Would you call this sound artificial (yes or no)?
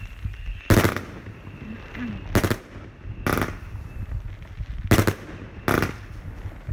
no